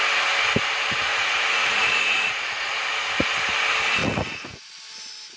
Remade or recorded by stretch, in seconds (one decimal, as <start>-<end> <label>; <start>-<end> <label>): 0.0-1.1 recorded; 1.1-2.7 remade; 2.7-4.0 recorded; 4.0-4.7 remade; 4.7-5.4 recorded